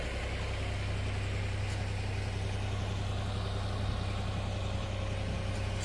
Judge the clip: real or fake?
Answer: real